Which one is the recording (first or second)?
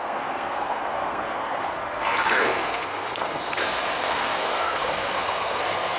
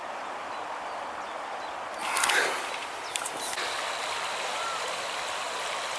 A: second